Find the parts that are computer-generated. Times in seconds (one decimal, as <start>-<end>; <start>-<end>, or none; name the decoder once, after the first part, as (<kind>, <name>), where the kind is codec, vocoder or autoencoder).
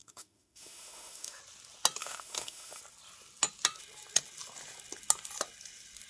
0.0-1.4 (autoencoder, DAC-VAE); 2.0-2.8